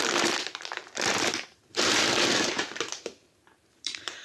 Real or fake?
fake